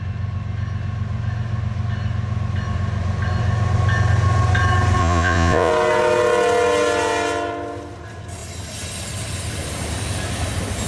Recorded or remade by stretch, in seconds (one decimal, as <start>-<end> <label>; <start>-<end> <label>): 0.0-5.0 recorded; 5.0-5.7 remade; 5.7-10.9 recorded